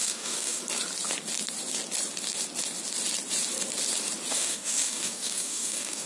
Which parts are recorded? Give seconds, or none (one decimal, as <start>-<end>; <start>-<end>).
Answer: 0.6-4.3